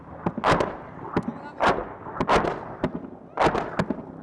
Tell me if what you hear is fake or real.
real